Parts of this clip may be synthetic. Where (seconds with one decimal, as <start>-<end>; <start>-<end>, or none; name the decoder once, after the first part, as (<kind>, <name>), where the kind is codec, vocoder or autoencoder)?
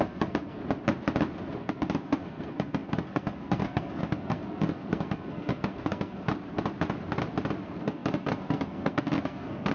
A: 0.0-0.6 (codec, SNAC); 1.6-6.3; 7.6-9.7